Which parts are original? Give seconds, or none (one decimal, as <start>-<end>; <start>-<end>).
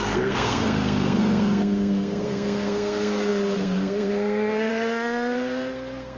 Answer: none